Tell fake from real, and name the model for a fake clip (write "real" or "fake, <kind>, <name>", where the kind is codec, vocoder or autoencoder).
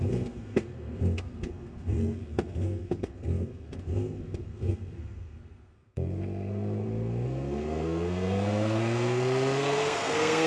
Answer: fake, codec, SNAC